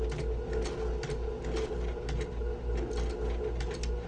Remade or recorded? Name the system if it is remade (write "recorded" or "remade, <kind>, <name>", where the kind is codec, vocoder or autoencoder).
recorded